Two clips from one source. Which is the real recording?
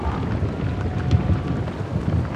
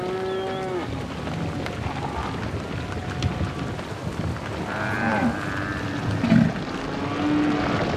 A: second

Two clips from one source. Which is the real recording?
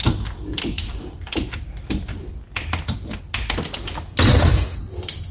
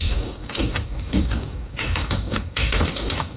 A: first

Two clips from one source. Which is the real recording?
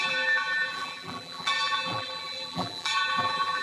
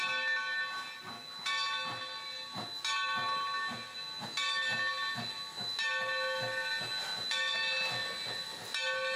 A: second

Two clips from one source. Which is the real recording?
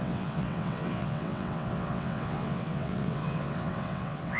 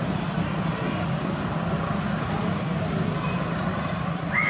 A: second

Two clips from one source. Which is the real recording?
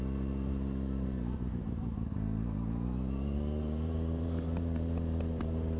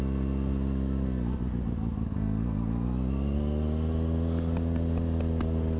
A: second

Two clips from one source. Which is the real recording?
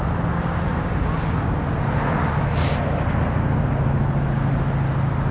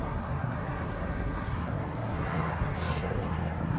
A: first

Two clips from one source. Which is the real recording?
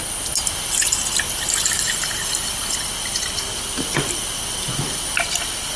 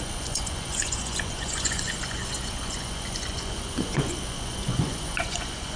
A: first